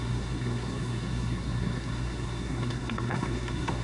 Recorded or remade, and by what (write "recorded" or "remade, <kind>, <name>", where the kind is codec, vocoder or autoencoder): remade, codec, SNAC